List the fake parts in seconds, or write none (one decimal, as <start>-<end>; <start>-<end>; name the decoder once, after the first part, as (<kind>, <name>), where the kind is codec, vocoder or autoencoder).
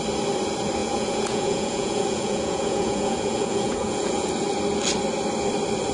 0.8-4.3 (vocoder, Vocos)